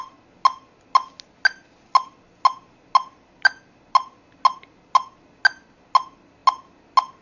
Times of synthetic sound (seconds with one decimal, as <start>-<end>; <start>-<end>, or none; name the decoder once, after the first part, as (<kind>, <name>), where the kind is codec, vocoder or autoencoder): none